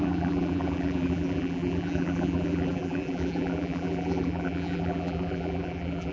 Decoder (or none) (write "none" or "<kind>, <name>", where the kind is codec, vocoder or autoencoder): vocoder, BigVGAN v2